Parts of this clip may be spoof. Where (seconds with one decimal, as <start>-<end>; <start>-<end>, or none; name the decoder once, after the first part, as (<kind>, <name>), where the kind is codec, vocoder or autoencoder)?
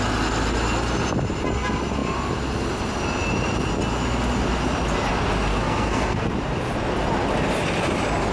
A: 5.5-6.3 (codec, SNAC)